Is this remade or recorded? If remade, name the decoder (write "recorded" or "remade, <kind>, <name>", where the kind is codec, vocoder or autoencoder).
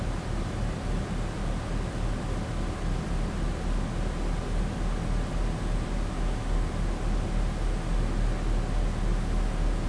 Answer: recorded